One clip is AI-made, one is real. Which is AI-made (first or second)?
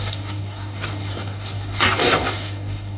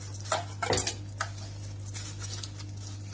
first